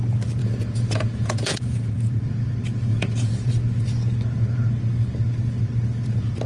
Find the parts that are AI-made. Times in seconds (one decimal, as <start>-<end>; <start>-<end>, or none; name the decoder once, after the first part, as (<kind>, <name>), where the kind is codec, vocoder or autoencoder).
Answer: 0.4-1.9 (vocoder, Vocos); 2.9-3.5